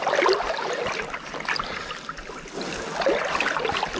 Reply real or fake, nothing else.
real